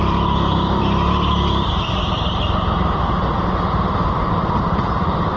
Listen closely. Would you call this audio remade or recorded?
remade